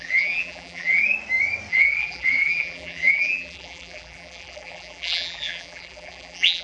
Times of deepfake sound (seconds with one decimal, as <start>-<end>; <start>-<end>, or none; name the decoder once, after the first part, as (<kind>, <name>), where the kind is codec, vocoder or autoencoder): 0.0-1.0 (vocoder, BigVGAN v2); 1.7-6.6